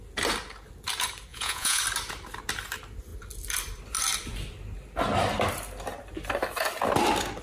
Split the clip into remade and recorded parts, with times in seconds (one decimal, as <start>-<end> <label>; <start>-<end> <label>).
0.0-1.3 recorded; 1.3-1.8 remade; 1.8-7.4 recorded